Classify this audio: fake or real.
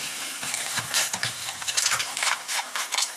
fake